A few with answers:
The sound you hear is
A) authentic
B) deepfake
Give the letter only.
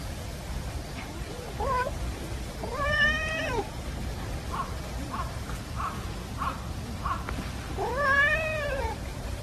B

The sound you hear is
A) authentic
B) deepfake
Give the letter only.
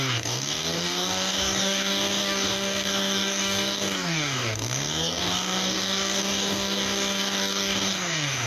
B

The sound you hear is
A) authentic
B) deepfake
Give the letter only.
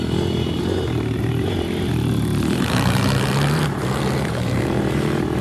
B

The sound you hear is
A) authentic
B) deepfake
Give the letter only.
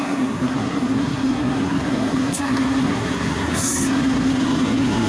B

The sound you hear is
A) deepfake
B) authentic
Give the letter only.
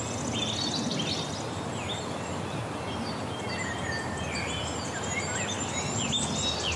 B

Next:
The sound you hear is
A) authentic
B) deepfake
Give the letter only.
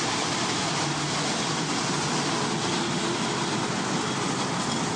A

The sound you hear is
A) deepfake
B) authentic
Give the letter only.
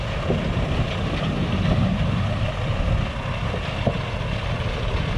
B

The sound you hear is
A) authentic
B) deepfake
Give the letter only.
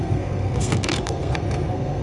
B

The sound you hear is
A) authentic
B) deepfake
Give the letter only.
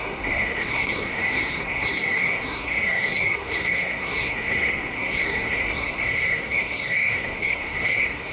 B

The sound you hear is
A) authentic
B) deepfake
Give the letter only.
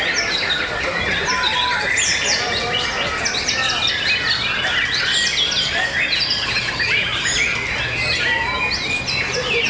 A